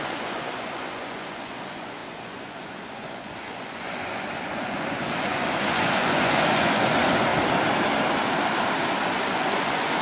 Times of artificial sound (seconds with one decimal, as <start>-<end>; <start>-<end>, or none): 0.0-7.3; 9.3-10.0